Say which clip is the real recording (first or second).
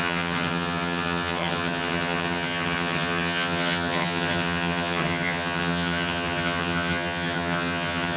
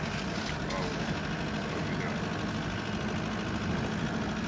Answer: second